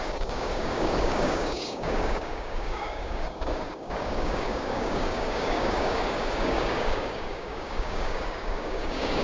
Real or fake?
fake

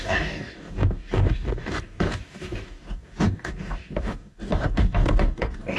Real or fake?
fake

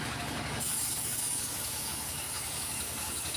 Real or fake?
fake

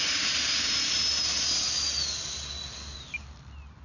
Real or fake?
real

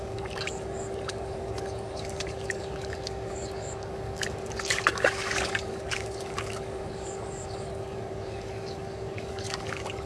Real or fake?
fake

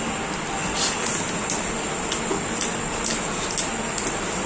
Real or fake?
real